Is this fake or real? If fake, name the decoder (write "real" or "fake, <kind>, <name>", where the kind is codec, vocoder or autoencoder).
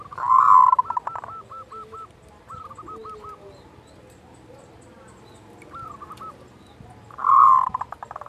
real